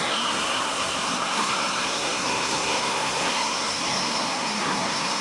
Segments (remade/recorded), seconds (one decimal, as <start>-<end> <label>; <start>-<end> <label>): 0.0-5.2 remade